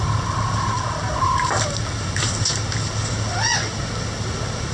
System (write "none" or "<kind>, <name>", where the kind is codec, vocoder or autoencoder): none